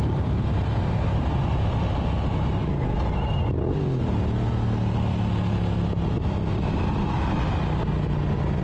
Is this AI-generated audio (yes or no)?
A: no